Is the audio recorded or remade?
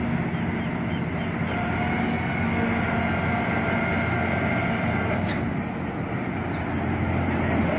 recorded